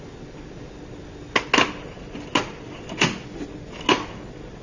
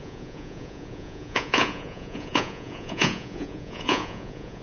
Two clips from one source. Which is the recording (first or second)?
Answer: first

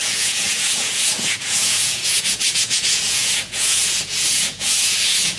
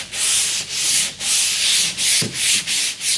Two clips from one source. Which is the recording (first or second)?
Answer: second